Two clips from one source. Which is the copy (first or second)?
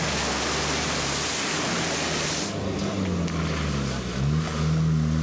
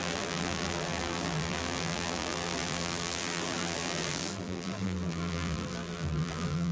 second